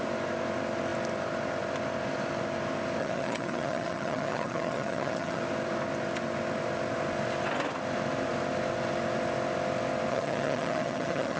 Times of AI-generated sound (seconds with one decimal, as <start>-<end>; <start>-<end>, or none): 3.0-5.4; 10.1-11.4